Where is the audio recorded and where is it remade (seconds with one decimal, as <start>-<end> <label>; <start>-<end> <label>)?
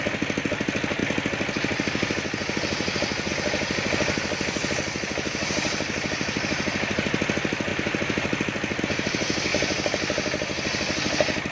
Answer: 0.0-11.5 recorded